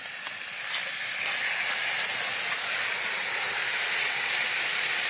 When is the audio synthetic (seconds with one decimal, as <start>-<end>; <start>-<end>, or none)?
none